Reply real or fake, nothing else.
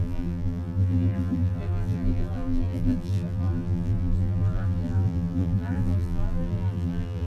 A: fake